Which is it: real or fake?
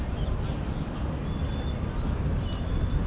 real